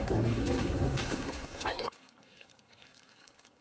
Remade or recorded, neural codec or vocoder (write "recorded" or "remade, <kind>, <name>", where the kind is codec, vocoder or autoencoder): remade, codec, SNAC